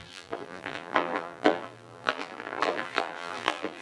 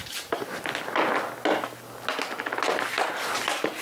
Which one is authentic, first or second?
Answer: second